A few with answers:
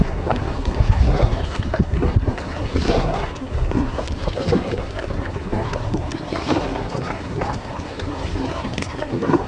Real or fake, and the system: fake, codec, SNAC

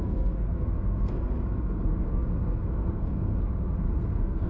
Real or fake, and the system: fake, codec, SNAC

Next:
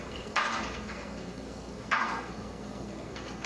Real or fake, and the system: fake, codec, SNAC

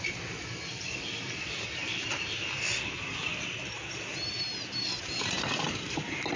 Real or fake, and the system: real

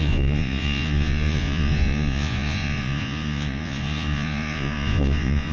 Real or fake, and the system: fake, vocoder, Vocos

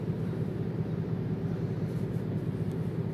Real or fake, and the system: real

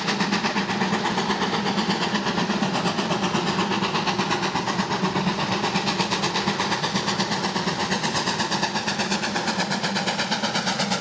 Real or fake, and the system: real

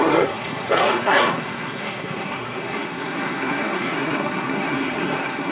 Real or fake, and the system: fake, codec, SNAC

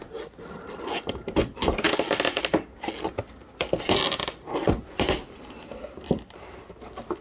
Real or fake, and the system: real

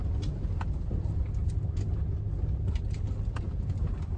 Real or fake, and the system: real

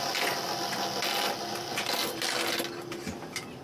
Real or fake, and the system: real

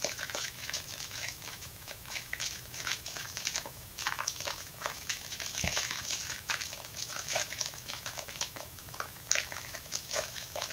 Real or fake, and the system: fake, autoencoder, DAC-VAE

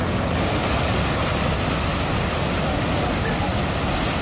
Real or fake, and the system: real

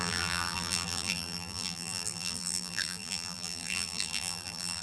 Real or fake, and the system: fake, vocoder, BigVGAN v2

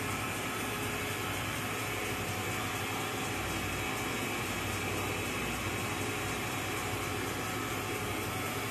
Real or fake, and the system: real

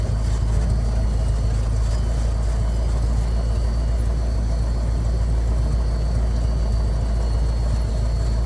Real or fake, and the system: real